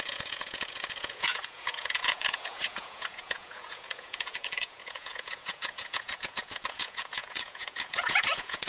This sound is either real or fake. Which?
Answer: fake